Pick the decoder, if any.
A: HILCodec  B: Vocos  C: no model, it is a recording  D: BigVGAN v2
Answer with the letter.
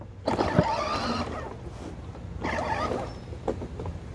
C